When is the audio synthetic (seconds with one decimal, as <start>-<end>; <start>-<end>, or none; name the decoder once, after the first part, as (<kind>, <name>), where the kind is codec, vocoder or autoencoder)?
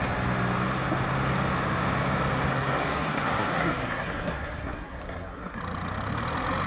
2.5-5.6 (codec, SNAC)